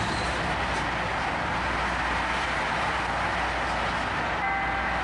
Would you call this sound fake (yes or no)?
no